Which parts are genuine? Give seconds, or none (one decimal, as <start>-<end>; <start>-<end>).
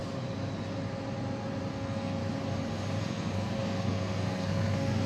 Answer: 0.0-1.7; 2.2-3.0